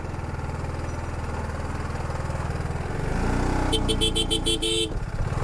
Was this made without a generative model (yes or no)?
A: yes